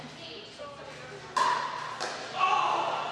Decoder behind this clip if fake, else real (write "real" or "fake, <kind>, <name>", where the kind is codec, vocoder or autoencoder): real